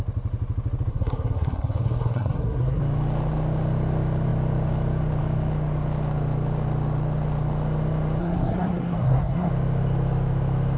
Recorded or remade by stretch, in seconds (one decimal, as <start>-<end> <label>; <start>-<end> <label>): 0.0-0.9 recorded; 0.9-2.8 remade; 2.8-8.2 recorded; 8.2-9.5 remade; 9.5-10.8 recorded